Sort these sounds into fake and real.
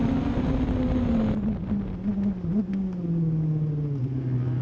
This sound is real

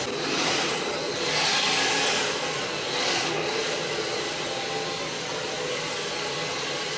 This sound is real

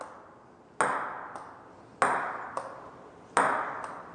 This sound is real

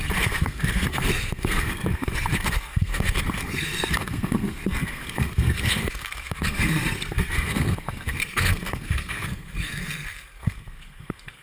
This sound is fake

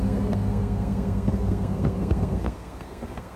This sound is fake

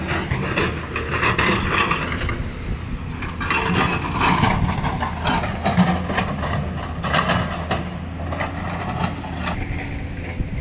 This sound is real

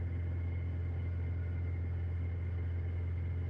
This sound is real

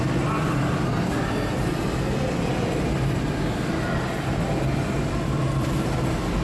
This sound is real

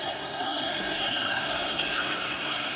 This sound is fake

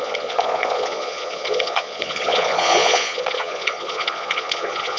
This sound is fake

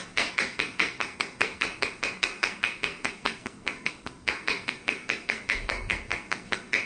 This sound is fake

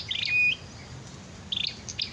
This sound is real